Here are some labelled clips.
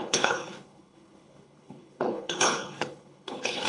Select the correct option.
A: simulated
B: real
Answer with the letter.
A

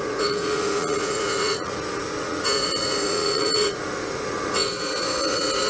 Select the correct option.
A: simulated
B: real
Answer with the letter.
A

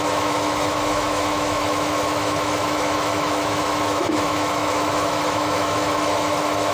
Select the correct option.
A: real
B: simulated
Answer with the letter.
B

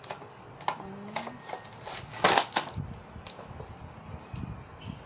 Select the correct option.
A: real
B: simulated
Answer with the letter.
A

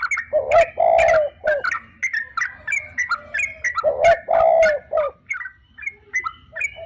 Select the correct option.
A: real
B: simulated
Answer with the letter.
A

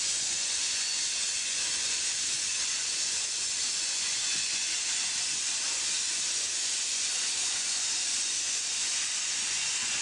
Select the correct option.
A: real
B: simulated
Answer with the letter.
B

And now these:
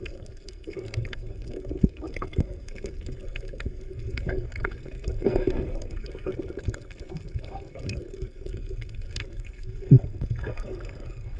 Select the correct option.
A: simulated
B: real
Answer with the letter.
A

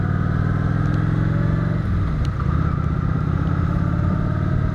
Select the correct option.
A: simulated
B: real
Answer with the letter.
B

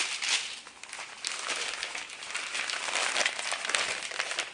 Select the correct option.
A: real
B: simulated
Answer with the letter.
A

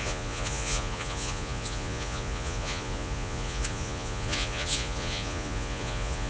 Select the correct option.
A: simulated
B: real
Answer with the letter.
A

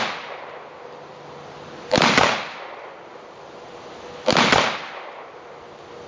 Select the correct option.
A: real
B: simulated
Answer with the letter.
A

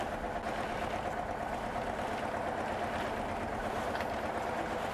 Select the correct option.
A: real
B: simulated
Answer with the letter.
A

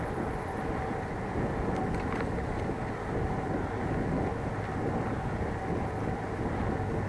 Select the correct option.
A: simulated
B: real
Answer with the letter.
B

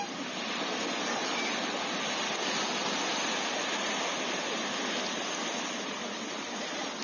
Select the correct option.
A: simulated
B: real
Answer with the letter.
B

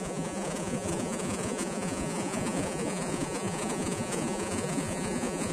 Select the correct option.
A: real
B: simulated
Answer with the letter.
B